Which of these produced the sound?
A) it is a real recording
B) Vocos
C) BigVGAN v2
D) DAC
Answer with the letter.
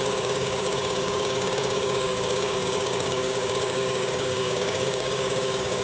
D